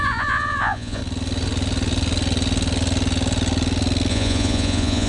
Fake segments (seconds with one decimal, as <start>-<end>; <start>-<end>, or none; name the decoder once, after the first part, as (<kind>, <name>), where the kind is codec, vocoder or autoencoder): 0.0-1.0 (vocoder, Vocos); 4.1-5.1